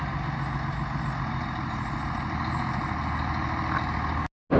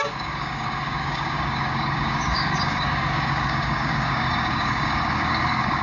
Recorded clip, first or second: first